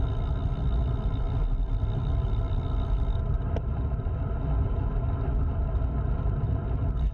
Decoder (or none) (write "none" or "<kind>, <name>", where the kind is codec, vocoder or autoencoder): none